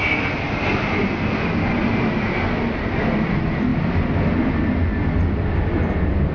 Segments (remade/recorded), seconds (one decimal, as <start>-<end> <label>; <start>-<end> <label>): 0.0-6.3 recorded